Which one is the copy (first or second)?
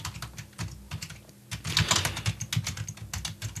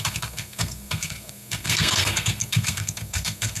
second